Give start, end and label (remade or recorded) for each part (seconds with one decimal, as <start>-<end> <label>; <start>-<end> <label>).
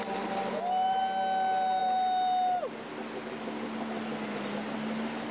0.0-5.3 recorded